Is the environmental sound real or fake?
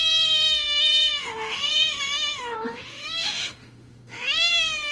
fake